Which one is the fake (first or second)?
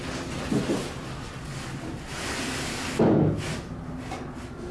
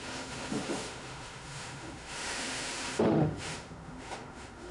second